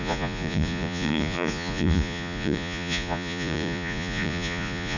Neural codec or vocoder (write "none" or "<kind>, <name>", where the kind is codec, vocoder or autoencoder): vocoder, Vocos